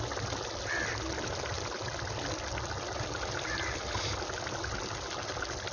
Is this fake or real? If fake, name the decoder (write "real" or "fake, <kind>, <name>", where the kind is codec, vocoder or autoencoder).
real